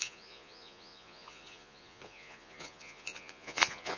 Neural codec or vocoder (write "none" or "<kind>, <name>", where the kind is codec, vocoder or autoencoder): vocoder, Vocos